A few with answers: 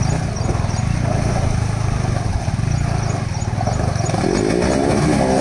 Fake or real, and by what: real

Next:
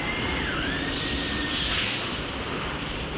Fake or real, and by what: real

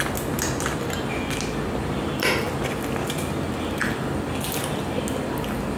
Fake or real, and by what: real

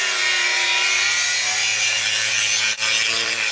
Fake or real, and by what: fake, vocoder, BigVGAN v2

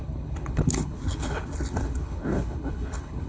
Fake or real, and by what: fake, codec, HILCodec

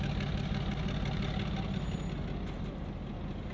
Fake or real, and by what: real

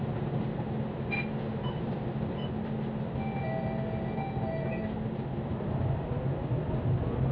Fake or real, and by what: real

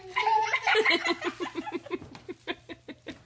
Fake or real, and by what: real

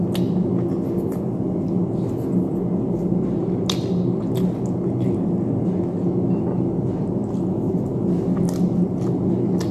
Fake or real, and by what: real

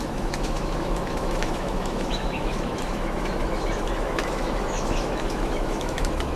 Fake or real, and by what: fake, autoencoder, DAC-VAE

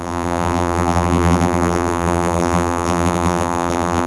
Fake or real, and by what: fake, vocoder, BigVGAN v2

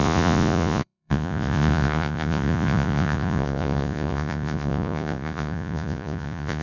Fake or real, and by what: fake, vocoder, Vocos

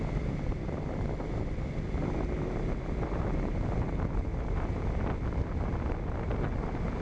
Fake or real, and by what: real